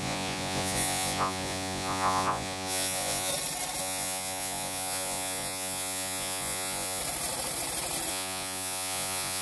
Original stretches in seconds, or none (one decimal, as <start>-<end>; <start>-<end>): 3.3-3.8; 7.0-8.1